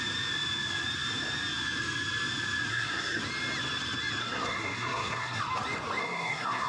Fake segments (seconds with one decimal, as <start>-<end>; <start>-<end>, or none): 2.7-3.2; 4.2-5.4; 6.0-6.7